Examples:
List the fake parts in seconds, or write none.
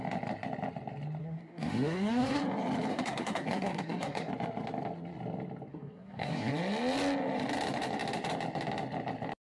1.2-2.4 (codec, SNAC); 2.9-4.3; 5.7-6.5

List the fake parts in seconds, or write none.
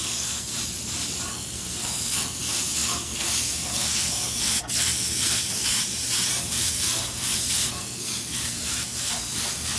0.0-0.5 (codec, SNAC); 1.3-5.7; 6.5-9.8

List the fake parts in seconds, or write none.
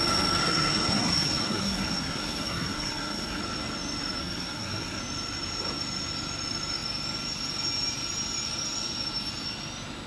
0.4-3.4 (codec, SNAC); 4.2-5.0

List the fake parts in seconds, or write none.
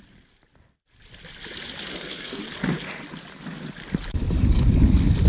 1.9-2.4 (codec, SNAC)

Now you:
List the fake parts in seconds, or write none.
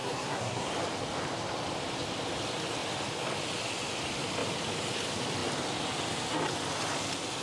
0.0-0.7 (codec, SNAC)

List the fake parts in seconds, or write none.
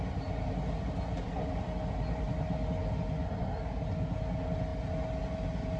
none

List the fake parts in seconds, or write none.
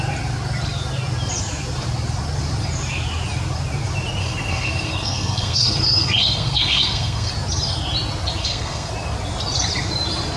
4.2-7.3 (codec, SNAC); 8.4-8.9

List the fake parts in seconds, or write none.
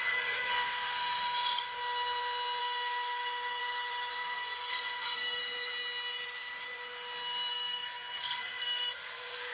0.0-1.2 (codec, SNAC); 2.6-3.6; 4.1-5.4; 7.5-9.5